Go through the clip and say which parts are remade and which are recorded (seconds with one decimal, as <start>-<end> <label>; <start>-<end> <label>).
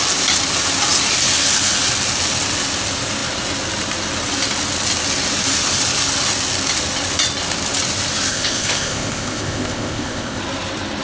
0.0-8.3 recorded; 8.3-10.4 remade; 10.4-11.0 recorded